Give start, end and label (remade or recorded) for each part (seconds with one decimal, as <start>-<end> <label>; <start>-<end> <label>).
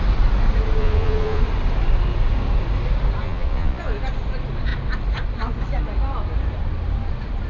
0.0-0.8 recorded; 0.8-1.4 remade; 1.4-3.2 recorded; 3.2-3.9 remade; 3.9-7.5 recorded